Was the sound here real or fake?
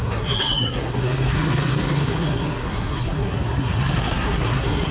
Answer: fake